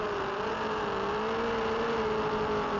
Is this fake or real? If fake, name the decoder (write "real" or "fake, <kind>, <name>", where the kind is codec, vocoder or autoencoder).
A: real